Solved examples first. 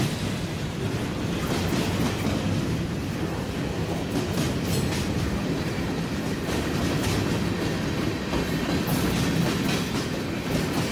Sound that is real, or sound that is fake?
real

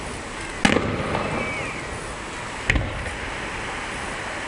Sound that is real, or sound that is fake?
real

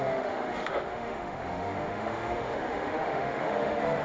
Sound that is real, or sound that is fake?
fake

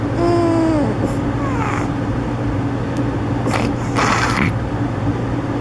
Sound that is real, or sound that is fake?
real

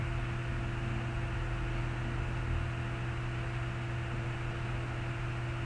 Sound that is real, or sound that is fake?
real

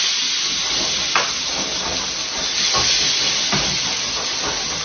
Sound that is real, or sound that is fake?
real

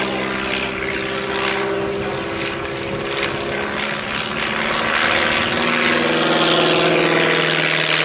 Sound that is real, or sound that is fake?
real